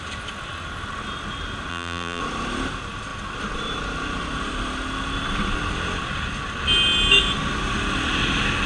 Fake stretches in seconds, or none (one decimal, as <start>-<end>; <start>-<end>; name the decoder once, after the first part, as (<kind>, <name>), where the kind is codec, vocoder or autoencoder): 1.7-2.2 (vocoder, BigVGAN v2)